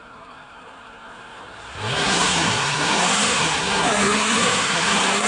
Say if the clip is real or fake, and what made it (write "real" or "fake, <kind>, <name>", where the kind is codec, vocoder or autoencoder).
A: fake, codec, SNAC